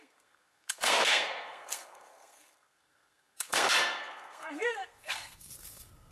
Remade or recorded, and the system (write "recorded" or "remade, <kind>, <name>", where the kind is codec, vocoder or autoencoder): remade, codec, SNAC